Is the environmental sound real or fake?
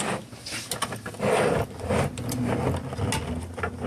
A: real